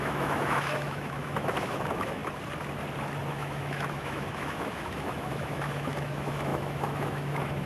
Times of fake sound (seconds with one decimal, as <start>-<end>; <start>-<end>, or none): 0.0-2.2; 3.3-7.7